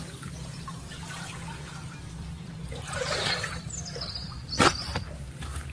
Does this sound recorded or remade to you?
remade